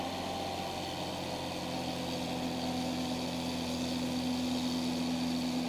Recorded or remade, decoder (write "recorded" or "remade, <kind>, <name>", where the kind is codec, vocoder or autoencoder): recorded